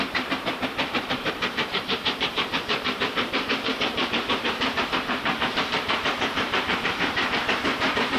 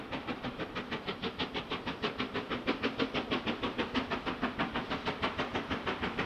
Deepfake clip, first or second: first